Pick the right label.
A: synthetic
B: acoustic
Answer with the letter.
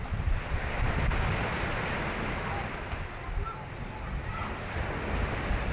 B